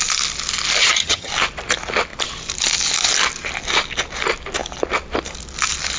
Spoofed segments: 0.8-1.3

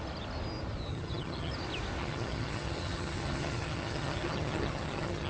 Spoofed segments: 0.9-1.5; 2.0-5.3

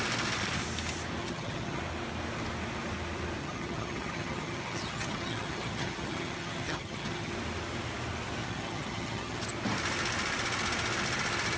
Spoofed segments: 1.2-1.8; 3.4-7.3; 8.4-9.4

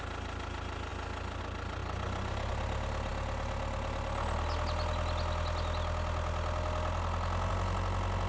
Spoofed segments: none

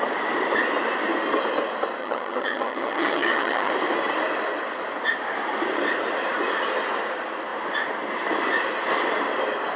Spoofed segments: 2.0-3.7

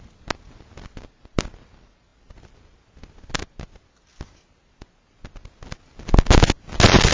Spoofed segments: none